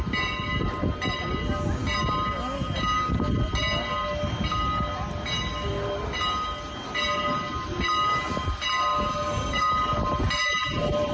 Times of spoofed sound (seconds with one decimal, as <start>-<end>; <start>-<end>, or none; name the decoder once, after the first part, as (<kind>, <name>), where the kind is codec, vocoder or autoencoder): 8.9-9.7 (codec, DAC)